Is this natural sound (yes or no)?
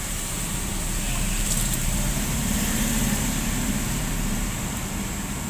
no